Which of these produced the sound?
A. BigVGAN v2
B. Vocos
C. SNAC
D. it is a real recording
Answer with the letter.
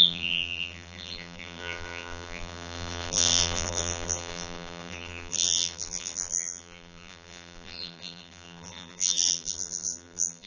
A